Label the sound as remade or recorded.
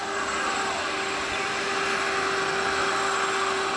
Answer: recorded